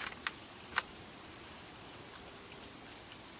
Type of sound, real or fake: real